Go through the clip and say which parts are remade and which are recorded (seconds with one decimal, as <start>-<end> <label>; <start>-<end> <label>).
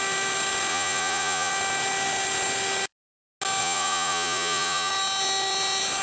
0.0-0.7 recorded; 0.7-1.5 remade; 1.5-3.6 recorded; 3.6-4.9 remade; 4.9-6.0 recorded